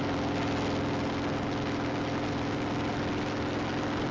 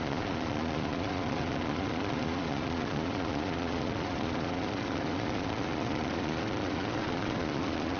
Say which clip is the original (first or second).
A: first